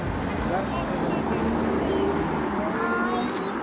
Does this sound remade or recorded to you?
recorded